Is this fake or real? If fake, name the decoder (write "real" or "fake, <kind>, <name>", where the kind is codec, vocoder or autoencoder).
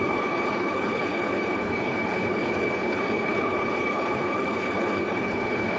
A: fake, codec, HILCodec